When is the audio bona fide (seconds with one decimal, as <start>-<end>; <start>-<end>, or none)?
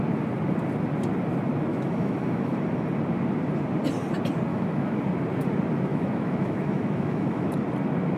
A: 0.0-1.7; 2.6-4.5; 5.0-5.9; 7.5-8.2